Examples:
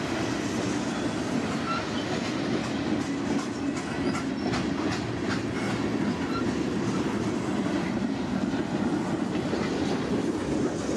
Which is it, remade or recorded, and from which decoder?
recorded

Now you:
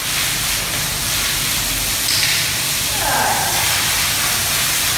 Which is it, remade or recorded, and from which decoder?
recorded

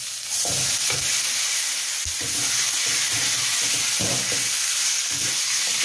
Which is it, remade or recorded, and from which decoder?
recorded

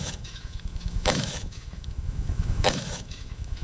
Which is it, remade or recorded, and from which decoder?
remade, autoencoder, DAC-VAE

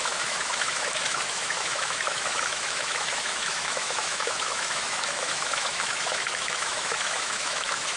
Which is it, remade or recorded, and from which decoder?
remade, autoencoder, DAC-VAE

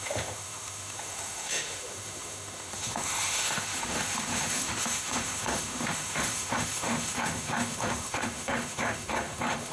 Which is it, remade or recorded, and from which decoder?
remade, autoencoder, DAC-VAE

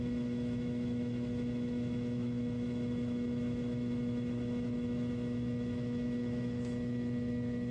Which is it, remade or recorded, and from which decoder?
remade, autoencoder, DAC-VAE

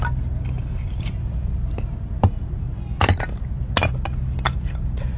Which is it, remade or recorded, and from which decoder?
recorded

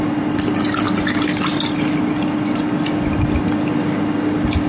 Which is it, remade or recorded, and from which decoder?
recorded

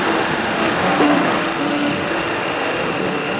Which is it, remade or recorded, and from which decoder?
remade, autoencoder, DAC-VAE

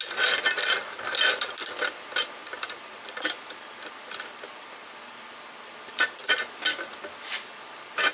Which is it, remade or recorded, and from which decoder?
recorded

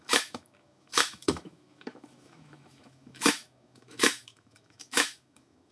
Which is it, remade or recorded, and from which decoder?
remade, autoencoder, DAC-VAE